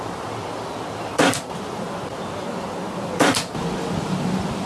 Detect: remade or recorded remade